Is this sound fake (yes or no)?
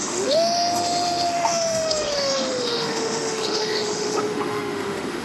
yes